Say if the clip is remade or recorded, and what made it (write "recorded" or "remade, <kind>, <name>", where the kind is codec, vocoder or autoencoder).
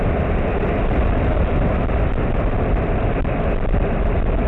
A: recorded